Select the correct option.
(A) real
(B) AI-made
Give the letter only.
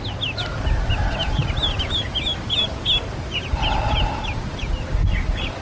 A